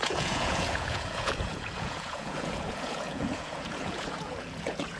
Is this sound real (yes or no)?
no